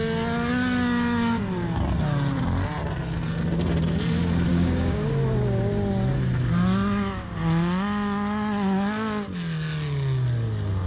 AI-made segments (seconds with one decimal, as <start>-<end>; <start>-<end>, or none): 4.5-5.1